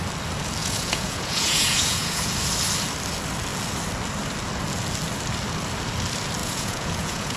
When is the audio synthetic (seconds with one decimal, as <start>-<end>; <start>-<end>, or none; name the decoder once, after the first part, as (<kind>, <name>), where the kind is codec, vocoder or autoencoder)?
0.6-2.3 (vocoder, Vocos); 6.4-7.4